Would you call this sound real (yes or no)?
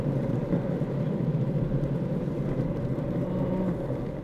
yes